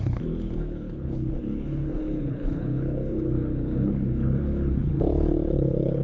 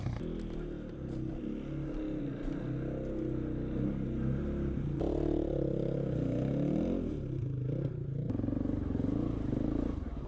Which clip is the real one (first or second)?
second